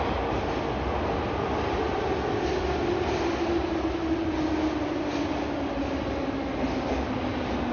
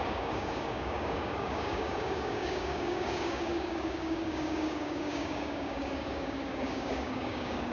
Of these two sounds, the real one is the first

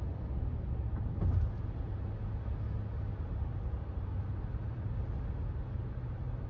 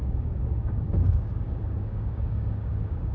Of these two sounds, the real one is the first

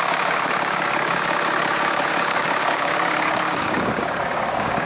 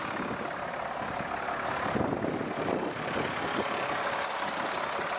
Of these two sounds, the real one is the second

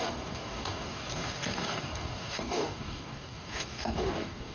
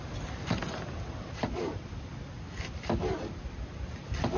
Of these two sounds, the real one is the second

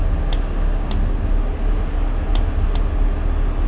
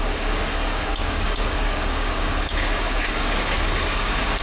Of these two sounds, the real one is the first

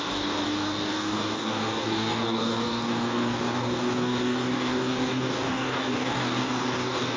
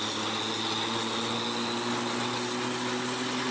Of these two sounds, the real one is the second